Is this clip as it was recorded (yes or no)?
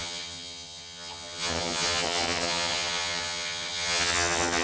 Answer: no